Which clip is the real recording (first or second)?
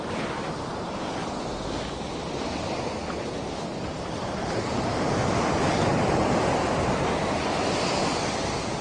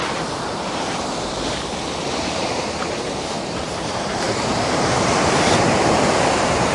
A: first